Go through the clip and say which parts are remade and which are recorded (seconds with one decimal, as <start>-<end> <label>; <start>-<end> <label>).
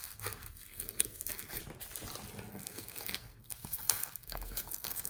0.0-1.6 remade; 1.6-2.5 recorded; 2.5-5.1 remade